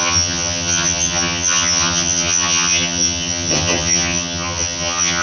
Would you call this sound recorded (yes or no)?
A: no